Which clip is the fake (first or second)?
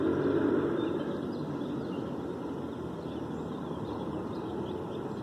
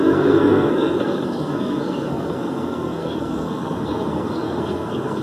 second